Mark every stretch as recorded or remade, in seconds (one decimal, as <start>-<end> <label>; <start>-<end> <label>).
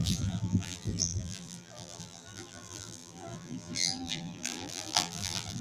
0.0-5.6 remade